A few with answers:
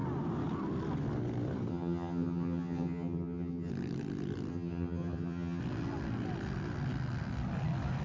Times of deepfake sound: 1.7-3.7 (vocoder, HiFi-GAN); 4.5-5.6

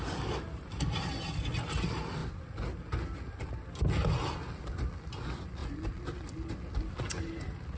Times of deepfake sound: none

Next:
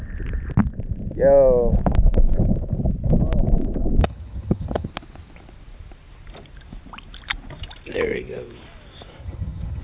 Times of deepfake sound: 4.0-4.9 (vocoder, HiFi-GAN); 9.2-9.8

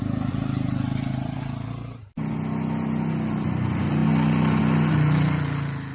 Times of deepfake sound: none

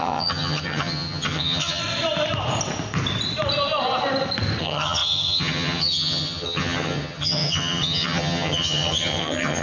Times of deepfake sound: 0.0-1.8 (vocoder, HiFi-GAN); 4.6-9.6

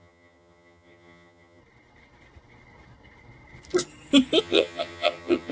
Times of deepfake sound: 0.0-1.6 (vocoder, HiFi-GAN); 4.4-5.5

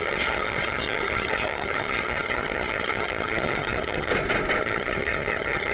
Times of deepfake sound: 0.0-4.1 (vocoder, HiFi-GAN); 4.6-5.7

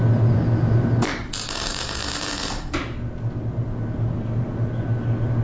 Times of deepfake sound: none